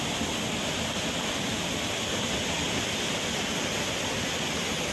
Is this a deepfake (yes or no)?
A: no